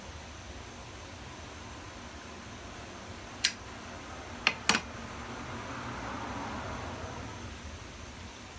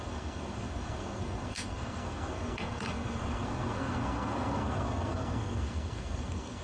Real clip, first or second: first